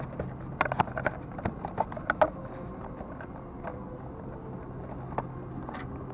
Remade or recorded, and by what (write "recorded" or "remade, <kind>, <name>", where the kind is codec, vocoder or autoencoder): recorded